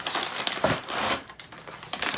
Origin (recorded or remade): recorded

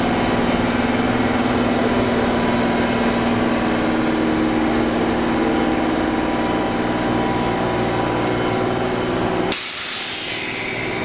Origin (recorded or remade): recorded